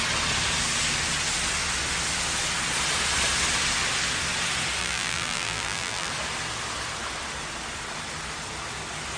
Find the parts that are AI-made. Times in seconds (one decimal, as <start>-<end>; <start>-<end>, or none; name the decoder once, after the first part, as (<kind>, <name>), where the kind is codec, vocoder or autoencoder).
4.8-6.1 (vocoder, BigVGAN v2)